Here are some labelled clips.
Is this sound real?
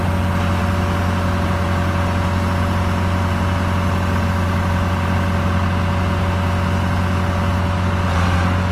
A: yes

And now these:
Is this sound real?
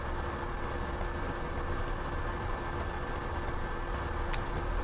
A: yes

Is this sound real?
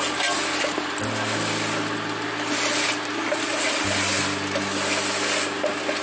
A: yes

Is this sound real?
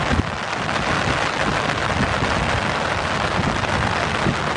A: yes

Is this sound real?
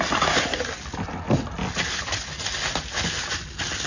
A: yes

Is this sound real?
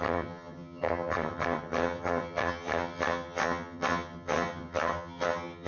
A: no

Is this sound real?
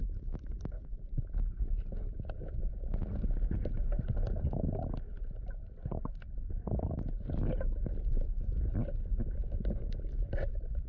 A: yes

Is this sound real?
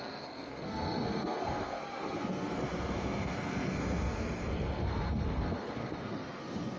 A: no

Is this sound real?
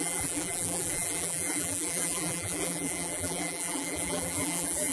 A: no